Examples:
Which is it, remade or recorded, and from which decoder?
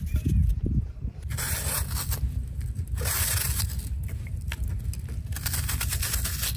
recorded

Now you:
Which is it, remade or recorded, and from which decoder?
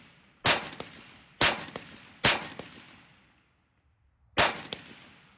recorded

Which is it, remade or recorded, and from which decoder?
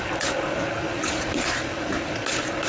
recorded